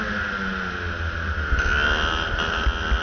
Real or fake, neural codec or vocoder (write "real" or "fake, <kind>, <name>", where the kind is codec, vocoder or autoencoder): real